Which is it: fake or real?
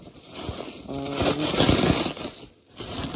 real